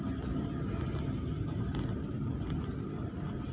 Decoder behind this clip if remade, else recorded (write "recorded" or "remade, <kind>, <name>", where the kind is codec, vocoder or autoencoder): recorded